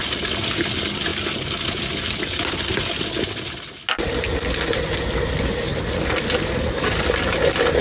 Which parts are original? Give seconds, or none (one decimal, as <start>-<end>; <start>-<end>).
0.0-7.8